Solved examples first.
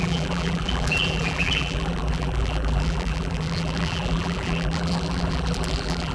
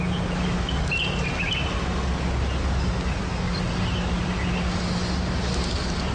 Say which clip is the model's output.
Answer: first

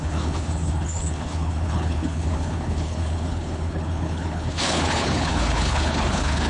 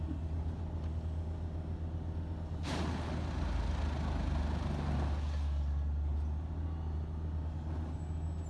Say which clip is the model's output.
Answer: first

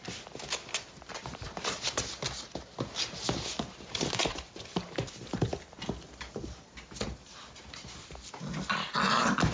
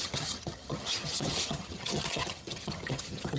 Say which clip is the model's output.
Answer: second